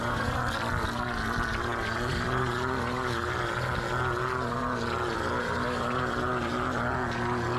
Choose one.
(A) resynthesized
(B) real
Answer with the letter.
B